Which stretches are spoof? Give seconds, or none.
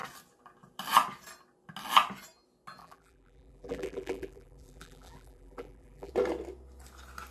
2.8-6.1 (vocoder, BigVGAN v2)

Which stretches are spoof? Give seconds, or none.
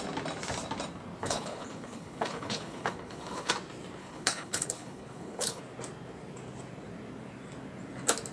1.2-3.5 (codec, HILCodec); 4.0-5.6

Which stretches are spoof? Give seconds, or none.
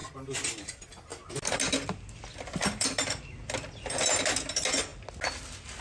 2.6-3.2 (vocoder, BigVGAN v2)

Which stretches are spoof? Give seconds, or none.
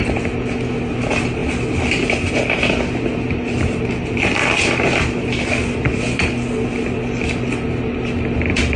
none